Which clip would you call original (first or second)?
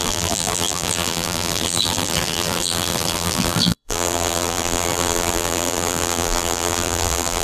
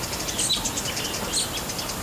second